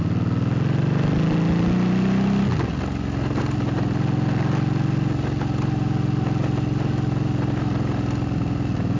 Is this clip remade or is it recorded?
recorded